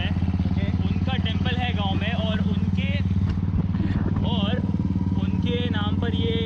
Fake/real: real